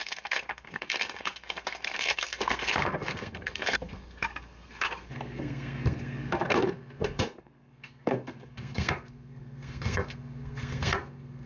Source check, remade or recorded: remade